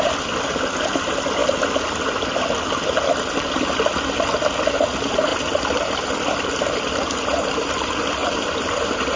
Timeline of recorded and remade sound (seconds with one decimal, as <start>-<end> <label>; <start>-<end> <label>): 0.0-5.3 recorded; 5.3-5.9 remade; 5.9-9.2 recorded